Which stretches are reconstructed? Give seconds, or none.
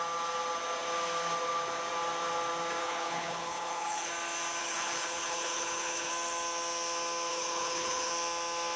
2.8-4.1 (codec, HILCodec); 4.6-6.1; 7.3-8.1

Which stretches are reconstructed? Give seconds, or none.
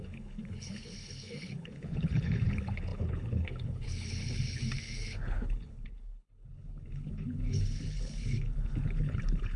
0.0-9.6 (codec, HILCodec)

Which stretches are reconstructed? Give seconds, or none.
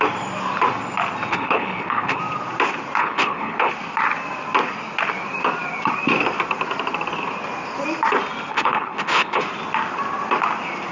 1.3-2.2 (codec, HILCodec); 3.0-3.7; 8.5-9.4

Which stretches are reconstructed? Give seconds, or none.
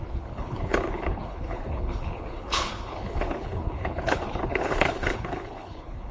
0.0-6.1 (codec, HILCodec)